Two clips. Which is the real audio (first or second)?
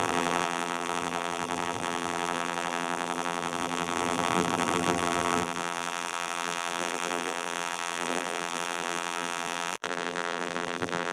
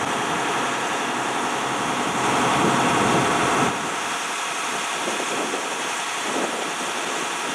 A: second